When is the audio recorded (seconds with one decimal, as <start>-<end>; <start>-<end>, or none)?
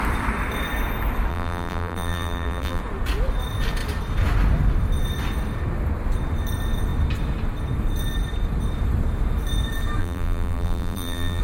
0.0-1.3; 2.8-10.0